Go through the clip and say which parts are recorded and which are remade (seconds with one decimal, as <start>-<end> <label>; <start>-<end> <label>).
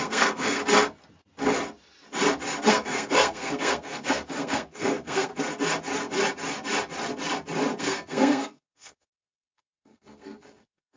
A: 0.0-0.6 remade; 0.6-2.7 recorded; 2.7-5.3 remade; 5.3-7.8 recorded; 7.8-11.0 remade